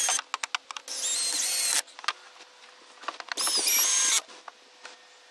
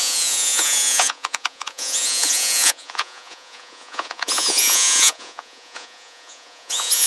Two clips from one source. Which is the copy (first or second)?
second